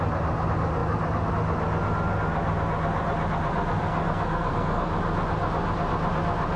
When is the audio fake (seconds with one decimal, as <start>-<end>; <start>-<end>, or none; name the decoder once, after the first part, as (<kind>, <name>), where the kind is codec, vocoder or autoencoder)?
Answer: 3.8-4.9 (codec, SNAC)